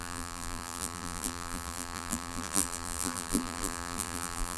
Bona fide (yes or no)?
no